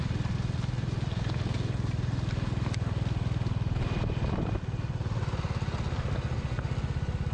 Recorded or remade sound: recorded